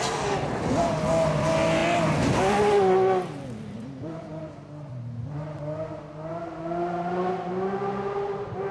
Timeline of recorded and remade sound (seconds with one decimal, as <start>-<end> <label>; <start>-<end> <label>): 0.0-8.7 recorded